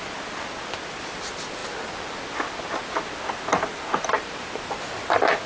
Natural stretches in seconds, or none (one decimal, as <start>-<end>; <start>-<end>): 0.0-5.5